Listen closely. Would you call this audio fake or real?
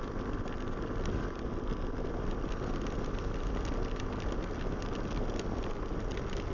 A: real